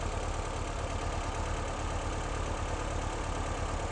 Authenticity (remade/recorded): recorded